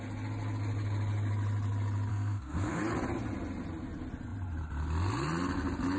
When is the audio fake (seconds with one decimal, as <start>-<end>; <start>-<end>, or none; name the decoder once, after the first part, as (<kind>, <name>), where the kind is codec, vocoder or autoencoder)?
2.1-2.8 (codec, SNAC)